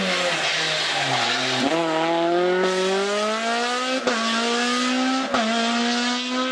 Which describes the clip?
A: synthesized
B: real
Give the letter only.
B